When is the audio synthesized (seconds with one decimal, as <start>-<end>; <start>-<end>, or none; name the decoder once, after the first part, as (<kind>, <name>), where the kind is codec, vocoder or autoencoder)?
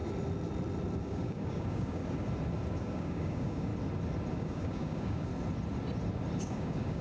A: 1.0-2.0 (codec, DAC); 2.8-3.7; 4.3-5.3; 6.4-7.0